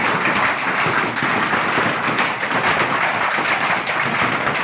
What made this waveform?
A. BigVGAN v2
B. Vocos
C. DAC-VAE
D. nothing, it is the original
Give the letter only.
D